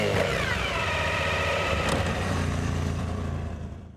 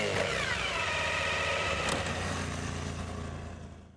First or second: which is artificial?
first